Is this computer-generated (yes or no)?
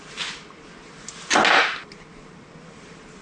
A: no